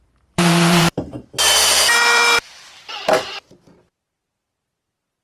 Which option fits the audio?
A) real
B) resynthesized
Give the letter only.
B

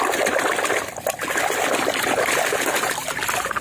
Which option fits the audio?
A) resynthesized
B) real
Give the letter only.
B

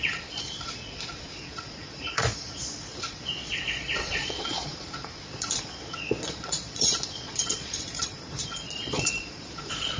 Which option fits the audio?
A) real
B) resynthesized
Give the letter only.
B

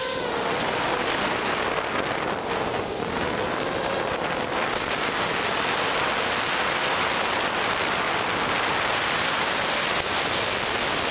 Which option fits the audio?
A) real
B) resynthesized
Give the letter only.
A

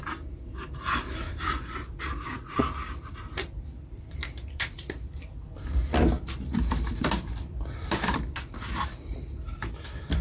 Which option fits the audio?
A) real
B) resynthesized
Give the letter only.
B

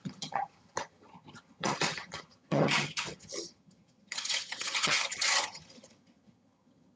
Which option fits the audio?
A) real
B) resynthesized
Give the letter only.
B